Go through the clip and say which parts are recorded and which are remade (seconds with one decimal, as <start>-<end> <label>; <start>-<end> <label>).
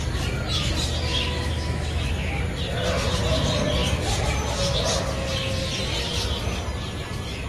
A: 0.0-1.1 recorded; 1.1-2.4 remade; 2.4-7.5 recorded